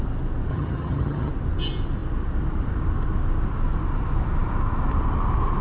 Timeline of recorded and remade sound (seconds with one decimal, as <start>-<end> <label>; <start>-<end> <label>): 0.0-0.5 recorded; 0.5-1.3 remade; 1.3-5.6 recorded